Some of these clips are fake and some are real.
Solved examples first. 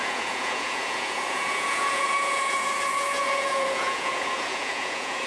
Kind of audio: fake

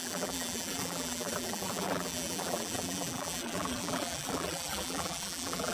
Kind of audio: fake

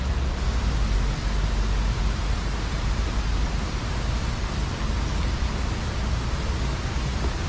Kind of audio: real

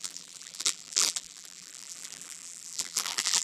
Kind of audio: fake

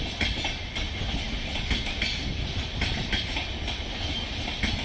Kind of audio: real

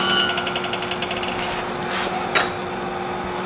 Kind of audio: real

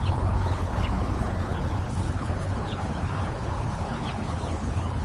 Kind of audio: fake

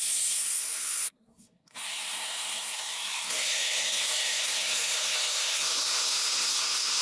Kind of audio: fake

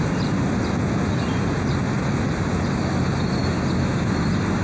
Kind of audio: real